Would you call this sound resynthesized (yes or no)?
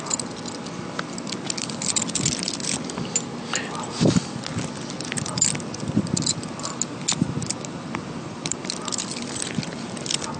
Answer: no